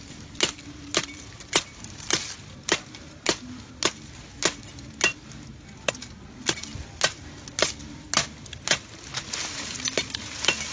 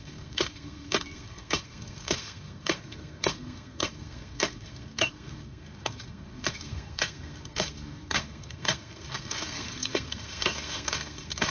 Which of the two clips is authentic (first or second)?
first